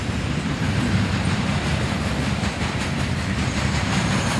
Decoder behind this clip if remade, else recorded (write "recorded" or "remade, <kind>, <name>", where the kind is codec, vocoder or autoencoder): remade, vocoder, BigVGAN v2